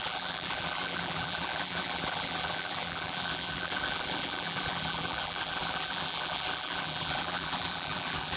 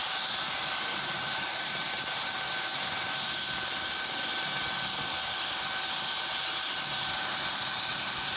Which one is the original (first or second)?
second